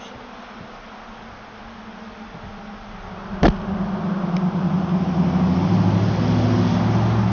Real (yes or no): yes